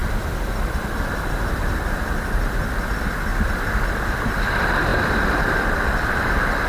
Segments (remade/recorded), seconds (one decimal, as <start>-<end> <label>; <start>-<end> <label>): 0.0-3.3 recorded; 3.3-4.5 remade; 4.5-6.7 recorded

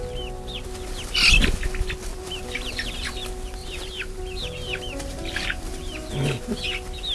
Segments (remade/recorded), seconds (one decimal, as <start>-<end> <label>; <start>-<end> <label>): 0.0-2.1 recorded; 2.1-3.1 remade; 3.1-3.6 recorded; 3.6-6.1 remade; 6.1-7.1 recorded

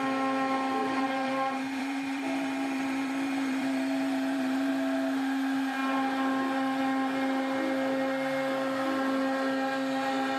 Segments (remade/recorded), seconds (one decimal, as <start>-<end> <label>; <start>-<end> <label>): 0.0-0.8 recorded; 0.8-4.7 remade; 4.7-10.4 recorded

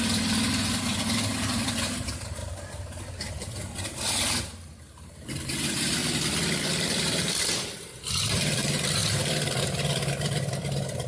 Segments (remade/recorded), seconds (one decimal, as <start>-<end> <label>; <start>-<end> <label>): 0.0-2.4 remade; 2.4-3.3 recorded; 3.3-6.0 remade; 6.0-7.0 recorded; 7.0-11.1 remade

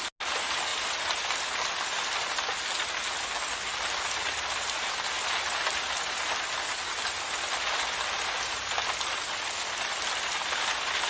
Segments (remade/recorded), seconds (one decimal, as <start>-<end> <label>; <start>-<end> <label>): 0.0-0.7 recorded; 0.7-5.8 remade; 5.8-11.1 recorded

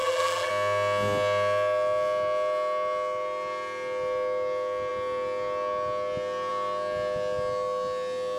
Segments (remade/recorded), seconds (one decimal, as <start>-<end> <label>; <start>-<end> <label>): 0.0-0.5 remade; 0.5-8.4 recorded

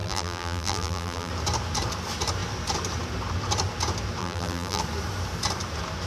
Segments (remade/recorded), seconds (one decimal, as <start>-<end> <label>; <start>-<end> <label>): 0.0-1.3 remade; 1.3-4.2 recorded; 4.2-4.8 remade; 4.8-6.1 recorded